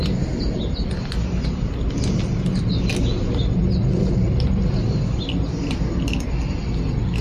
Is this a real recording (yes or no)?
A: yes